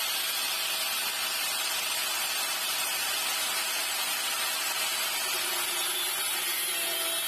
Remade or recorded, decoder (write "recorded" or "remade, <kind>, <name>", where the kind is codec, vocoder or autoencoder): remade, vocoder, BigVGAN v2